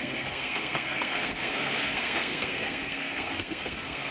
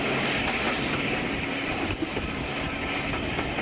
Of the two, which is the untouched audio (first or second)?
second